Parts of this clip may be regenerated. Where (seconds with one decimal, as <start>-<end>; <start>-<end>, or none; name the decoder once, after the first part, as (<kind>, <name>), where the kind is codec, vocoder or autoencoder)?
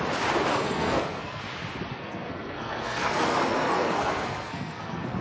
0.5-1.4 (codec, SNAC); 1.9-5.2